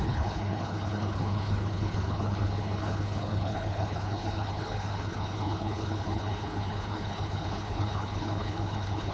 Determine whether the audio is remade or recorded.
remade